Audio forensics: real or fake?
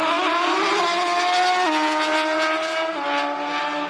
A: real